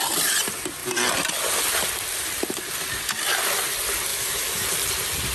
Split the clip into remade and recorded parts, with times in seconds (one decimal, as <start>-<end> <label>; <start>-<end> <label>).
0.0-4.1 recorded; 4.1-4.6 remade; 4.6-5.3 recorded